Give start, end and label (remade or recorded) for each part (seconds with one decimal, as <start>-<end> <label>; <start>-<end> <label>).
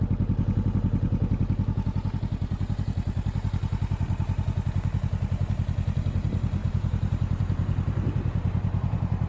0.0-6.6 recorded; 6.6-9.3 remade